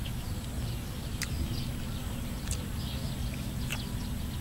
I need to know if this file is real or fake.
real